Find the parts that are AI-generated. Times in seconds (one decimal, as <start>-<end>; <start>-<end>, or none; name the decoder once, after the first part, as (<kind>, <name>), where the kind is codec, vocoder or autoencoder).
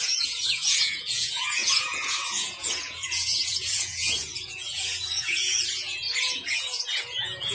0.0-7.5 (vocoder, Vocos)